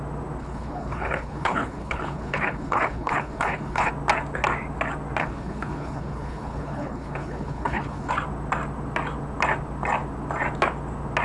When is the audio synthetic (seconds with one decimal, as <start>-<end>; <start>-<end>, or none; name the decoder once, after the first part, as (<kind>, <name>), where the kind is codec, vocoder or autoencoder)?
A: 0.4-3.9 (codec, HILCodec); 5.2-8.1